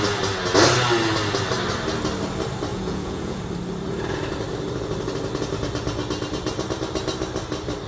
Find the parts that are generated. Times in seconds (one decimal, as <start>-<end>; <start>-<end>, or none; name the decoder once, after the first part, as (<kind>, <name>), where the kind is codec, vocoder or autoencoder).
2.7-3.4 (vocoder, Vocos)

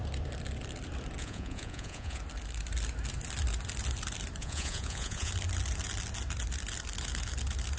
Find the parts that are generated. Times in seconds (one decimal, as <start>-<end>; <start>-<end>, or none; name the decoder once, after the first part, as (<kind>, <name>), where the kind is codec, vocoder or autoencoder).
1.2-2.2 (vocoder, Vocos); 4.4-5.3

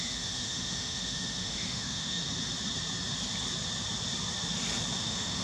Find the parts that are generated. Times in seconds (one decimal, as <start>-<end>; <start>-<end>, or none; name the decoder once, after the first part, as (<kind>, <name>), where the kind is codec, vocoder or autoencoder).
0.0-2.2 (autoencoder, DAC-VAE); 5.0-5.4

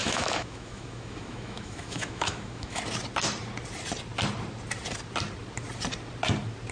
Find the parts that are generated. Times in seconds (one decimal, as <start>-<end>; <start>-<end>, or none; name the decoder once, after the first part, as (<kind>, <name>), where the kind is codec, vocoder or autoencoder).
0.0-2.8 (autoencoder, DAC-VAE)

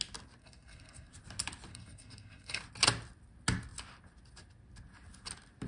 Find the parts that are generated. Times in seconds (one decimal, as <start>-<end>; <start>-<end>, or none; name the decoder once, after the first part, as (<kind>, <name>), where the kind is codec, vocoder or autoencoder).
0.4-1.1 (codec, SNAC); 1.7-2.6

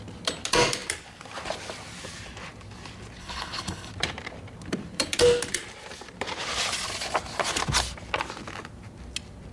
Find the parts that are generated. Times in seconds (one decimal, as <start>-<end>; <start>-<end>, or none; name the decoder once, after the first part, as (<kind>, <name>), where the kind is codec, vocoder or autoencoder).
3.2-3.9 (codec, HILCodec)

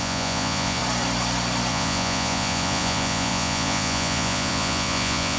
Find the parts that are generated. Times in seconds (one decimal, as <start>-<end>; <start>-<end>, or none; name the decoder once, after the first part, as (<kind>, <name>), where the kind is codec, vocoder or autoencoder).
0.0-0.8 (vocoder, Vocos); 1.7-5.4